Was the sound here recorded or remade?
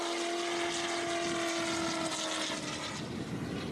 recorded